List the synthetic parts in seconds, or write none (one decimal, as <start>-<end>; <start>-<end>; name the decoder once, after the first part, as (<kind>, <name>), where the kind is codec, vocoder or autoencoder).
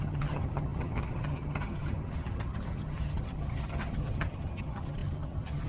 0.0-5.7 (vocoder, HiFi-GAN)